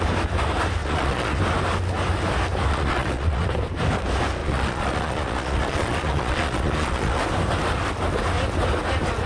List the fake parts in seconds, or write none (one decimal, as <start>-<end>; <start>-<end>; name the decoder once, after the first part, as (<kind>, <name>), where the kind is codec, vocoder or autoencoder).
0.8-1.4 (vocoder, Vocos); 2.7-3.5; 4.4-7.2